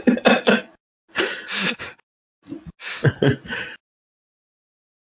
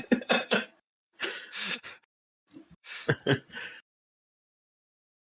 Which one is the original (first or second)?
first